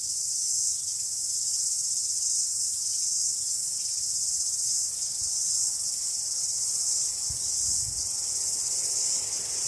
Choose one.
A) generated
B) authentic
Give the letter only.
B